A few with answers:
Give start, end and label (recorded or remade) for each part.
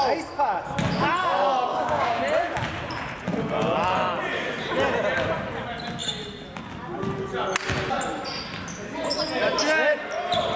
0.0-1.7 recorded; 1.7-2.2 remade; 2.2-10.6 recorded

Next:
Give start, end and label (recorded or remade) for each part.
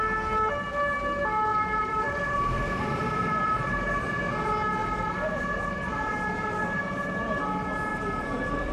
0.0-1.5 recorded; 1.5-4.1 remade; 4.1-4.8 recorded; 4.8-6.8 remade; 6.8-7.9 recorded; 7.9-8.7 remade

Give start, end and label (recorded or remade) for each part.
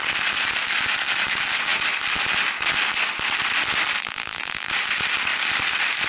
0.0-4.0 recorded; 4.0-4.7 remade; 4.7-6.1 recorded